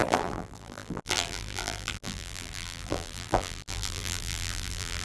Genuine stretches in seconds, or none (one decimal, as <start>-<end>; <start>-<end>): none

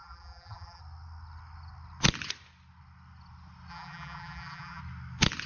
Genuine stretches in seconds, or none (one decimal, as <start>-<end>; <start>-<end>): 0.8-3.7; 4.8-5.5

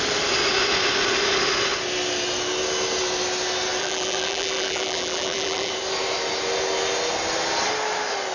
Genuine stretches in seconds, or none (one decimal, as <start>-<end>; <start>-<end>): 0.0-3.8; 5.7-8.3

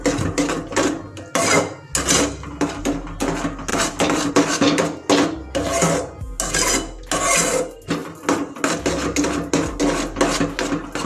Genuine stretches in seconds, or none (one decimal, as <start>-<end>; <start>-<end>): 0.0-3.7; 4.3-11.1

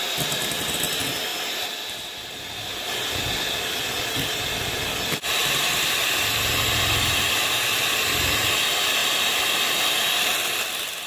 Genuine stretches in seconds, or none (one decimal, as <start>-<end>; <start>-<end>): 0.0-1.3; 2.0-9.0; 10.5-11.1

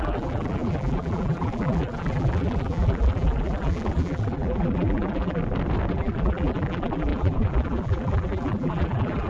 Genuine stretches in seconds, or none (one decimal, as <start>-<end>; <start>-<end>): 5.4-5.9

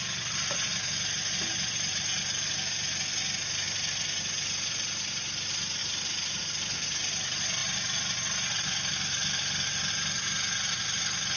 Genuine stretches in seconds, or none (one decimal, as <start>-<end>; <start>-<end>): 0.0-11.4

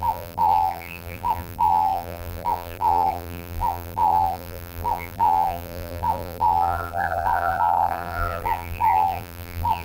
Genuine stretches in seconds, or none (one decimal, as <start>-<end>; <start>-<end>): none